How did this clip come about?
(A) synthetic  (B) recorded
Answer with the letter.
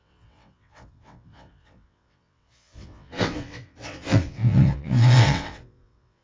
A